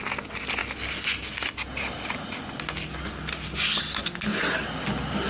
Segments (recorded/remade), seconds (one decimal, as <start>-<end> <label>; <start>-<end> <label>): 0.0-5.3 recorded

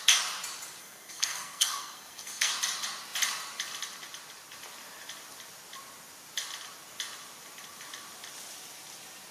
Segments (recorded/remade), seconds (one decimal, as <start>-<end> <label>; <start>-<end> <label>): 0.0-0.8 recorded; 0.8-2.5 remade; 2.5-9.3 recorded

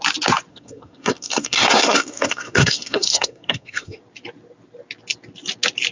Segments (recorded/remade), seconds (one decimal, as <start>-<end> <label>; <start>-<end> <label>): 0.0-0.5 recorded; 0.5-4.0 remade; 4.0-5.9 recorded

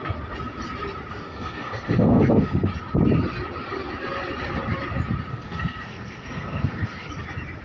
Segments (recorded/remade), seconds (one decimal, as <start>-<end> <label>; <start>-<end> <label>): 0.0-1.1 recorded; 1.1-2.7 remade; 2.7-5.3 recorded; 5.3-7.1 remade; 7.1-7.6 recorded

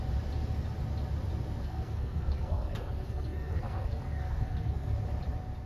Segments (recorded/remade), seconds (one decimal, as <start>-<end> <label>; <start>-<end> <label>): 0.0-1.6 recorded; 1.6-5.0 remade; 5.0-5.7 recorded

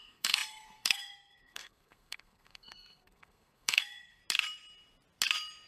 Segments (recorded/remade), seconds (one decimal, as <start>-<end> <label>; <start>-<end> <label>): 0.0-4.2 remade; 4.2-5.7 recorded